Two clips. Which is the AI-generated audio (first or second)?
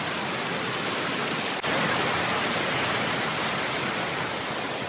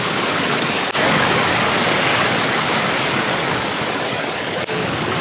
second